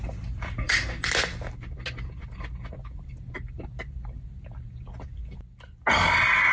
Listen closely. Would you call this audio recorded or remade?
recorded